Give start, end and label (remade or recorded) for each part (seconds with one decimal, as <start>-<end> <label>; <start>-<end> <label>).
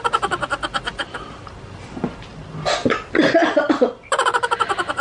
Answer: 0.0-2.3 remade; 2.3-3.9 recorded; 3.9-5.0 remade